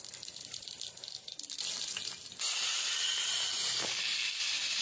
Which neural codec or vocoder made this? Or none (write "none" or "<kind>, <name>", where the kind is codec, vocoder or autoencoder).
none